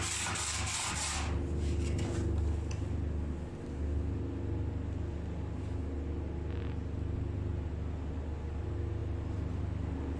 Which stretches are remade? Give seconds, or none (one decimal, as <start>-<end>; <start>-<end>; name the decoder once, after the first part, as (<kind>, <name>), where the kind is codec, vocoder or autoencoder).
none